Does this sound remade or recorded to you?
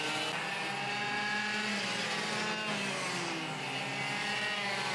recorded